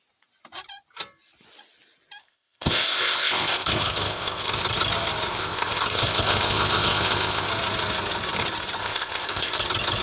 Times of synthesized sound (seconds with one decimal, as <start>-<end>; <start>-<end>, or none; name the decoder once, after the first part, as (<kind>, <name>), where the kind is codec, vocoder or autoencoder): 2.2-4.6 (codec, ZipCodec); 5.3-7.5; 8.8-9.6